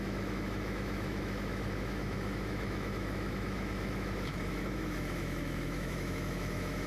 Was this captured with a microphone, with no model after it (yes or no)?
no